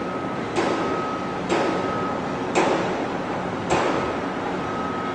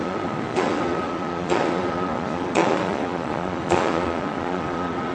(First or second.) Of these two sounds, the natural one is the first